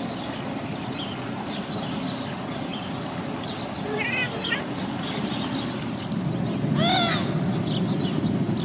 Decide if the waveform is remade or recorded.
recorded